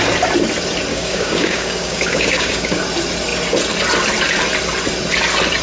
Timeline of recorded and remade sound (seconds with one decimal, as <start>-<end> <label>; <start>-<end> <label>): 0.0-0.9 recorded; 0.9-2.8 remade; 2.8-5.6 recorded